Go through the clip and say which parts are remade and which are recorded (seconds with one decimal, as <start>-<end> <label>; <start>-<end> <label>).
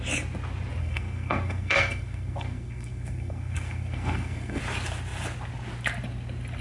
0.0-0.8 recorded; 0.8-4.6 remade; 4.6-6.6 recorded